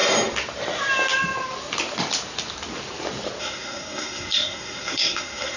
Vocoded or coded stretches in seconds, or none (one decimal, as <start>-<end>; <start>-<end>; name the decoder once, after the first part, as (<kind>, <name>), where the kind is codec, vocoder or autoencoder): 3.4-5.6 (codec, SNAC)